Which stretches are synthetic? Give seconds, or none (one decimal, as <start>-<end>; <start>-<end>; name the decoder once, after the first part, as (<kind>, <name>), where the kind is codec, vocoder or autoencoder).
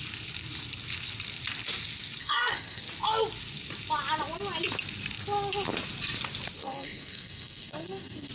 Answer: 2.2-2.8 (codec, SNAC); 6.6-8.3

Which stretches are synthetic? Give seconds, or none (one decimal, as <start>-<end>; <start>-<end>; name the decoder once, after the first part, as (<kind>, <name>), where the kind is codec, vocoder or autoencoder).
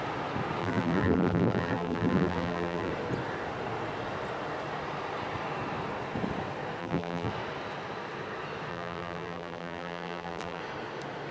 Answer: 0.6-2.9 (vocoder, BigVGAN v2); 6.8-7.3; 8.7-10.6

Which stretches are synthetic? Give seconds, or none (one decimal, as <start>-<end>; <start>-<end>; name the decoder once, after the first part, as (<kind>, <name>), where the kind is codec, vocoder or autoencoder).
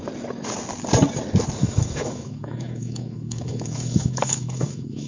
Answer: 1.6-5.1 (autoencoder, DAC-VAE)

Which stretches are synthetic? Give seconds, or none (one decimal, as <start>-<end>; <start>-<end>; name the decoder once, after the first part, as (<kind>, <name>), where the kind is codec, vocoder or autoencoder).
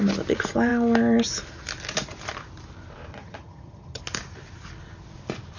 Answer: 3.1-4.0 (vocoder, HiFi-GAN)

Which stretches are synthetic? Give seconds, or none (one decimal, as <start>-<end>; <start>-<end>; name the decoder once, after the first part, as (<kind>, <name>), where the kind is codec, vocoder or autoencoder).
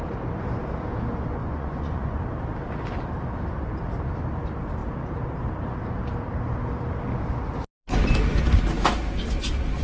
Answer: 1.4-2.2 (vocoder, Vocos)